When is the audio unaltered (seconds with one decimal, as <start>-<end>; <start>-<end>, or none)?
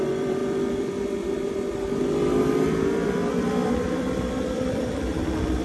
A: 0.4-3.7